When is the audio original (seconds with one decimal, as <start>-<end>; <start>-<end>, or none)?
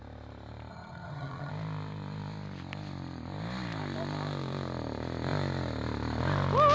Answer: 0.0-0.7; 1.5-6.7